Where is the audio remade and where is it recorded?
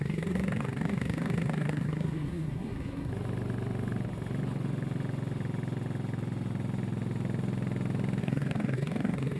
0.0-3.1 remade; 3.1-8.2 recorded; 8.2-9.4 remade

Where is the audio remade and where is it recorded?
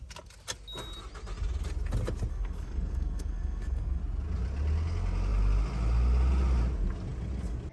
0.0-2.3 recorded; 2.3-4.0 remade; 4.0-7.7 recorded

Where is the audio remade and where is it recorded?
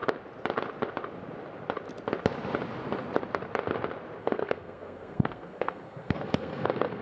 0.0-4.2 recorded; 4.2-7.0 remade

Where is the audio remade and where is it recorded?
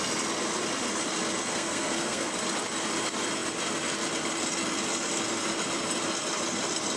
0.0-1.5 recorded; 1.5-2.3 remade; 2.3-7.0 recorded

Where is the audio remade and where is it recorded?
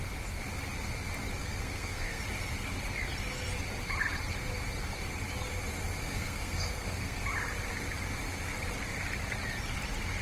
0.0-1.4 recorded; 1.4-2.2 remade; 2.2-6.0 recorded; 6.0-7.2 remade; 7.2-10.2 recorded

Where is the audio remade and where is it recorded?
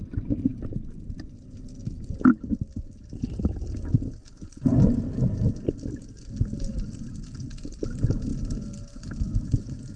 0.0-10.0 recorded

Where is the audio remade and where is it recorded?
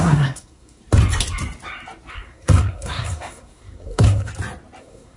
0.0-0.8 remade; 0.8-2.1 recorded; 2.1-4.3 remade; 4.3-4.8 recorded; 4.8-5.2 remade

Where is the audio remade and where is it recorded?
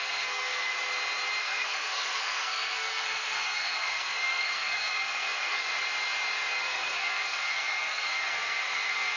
0.0-0.7 remade; 0.7-1.4 recorded; 1.4-5.7 remade; 5.7-6.6 recorded; 6.6-9.2 remade